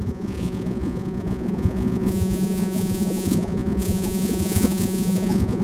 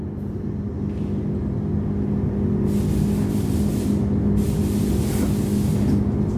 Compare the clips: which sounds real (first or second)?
second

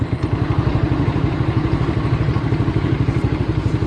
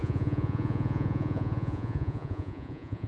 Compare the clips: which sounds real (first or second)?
first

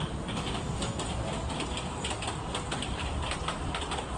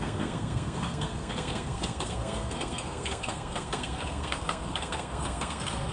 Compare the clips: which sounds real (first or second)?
first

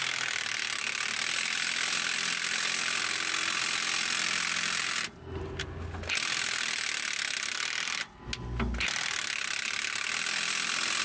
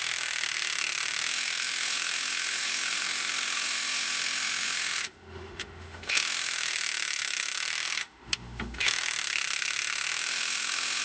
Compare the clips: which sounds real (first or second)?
first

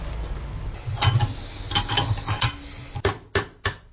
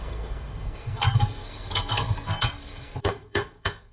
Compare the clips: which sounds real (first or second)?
first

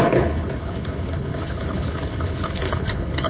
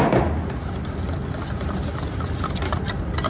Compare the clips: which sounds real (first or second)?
second